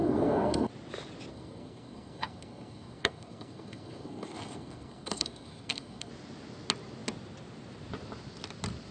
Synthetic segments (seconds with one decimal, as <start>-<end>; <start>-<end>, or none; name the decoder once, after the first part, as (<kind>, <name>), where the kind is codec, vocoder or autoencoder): 0.0-0.7 (codec, SNAC); 1.3-6.1